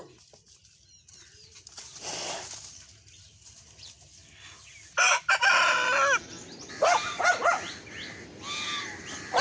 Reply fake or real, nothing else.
real